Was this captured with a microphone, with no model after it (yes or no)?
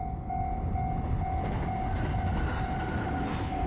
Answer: yes